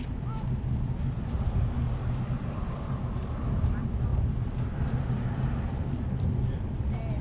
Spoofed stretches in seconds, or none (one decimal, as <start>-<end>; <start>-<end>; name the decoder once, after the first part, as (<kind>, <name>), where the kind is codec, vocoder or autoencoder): 4.1-4.7 (vocoder, BigVGAN v2)